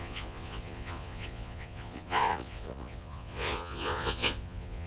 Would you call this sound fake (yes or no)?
yes